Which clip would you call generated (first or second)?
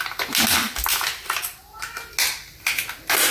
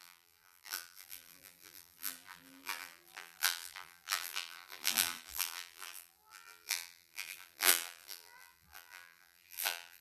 second